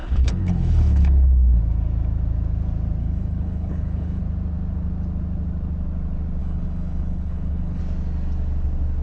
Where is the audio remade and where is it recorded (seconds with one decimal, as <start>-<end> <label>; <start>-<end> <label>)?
0.0-1.6 remade; 1.6-3.0 recorded; 3.0-4.2 remade; 4.2-6.4 recorded; 6.4-7.8 remade; 7.8-9.0 recorded